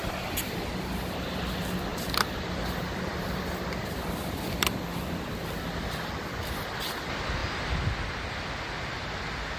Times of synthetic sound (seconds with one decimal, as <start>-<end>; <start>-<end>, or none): 1.9-4.9